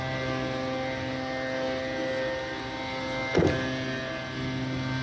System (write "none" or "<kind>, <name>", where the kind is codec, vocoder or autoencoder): none